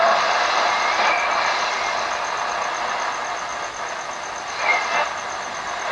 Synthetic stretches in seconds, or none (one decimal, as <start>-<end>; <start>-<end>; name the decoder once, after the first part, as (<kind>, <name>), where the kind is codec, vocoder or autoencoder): none